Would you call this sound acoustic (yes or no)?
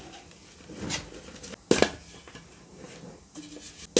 yes